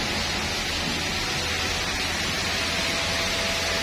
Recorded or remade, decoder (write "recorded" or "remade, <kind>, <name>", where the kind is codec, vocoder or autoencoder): recorded